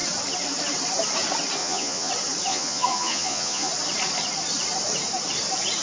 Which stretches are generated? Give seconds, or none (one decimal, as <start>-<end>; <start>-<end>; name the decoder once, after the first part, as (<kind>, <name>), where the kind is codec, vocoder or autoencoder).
1.6-2.1 (vocoder, Vocos); 2.5-3.7